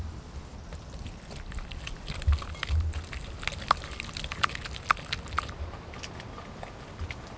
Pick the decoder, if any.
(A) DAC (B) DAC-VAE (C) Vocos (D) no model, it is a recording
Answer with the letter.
D